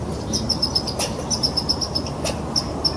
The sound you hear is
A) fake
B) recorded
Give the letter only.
B